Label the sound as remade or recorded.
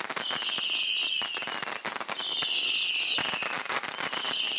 recorded